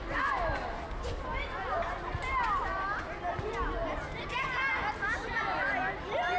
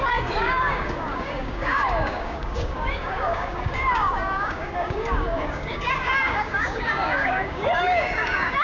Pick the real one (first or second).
first